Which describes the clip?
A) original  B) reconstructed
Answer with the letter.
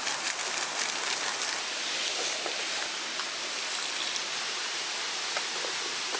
A